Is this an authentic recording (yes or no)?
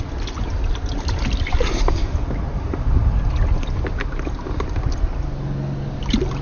yes